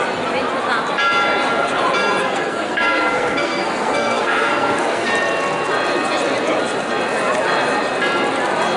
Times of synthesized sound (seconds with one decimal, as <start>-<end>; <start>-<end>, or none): 2.2-5.1